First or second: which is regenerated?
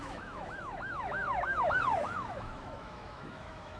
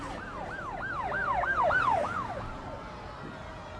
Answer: first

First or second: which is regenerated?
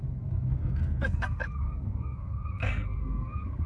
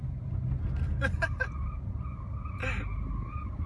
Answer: first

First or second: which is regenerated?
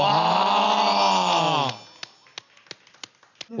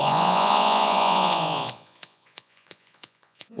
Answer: second